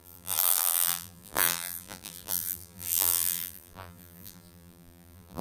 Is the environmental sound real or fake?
fake